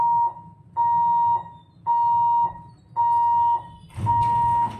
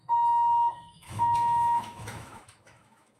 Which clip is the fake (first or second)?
second